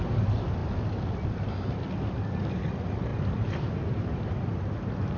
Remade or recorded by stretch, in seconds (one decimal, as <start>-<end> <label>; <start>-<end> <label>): 0.0-0.6 remade; 0.6-2.5 recorded; 2.5-5.2 remade